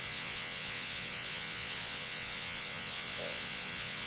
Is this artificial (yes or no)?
yes